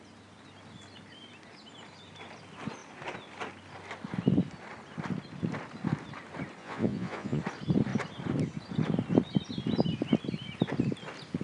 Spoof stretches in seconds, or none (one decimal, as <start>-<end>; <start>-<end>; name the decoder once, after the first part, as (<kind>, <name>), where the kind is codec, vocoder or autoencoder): 6.6-7.4 (vocoder, Vocos)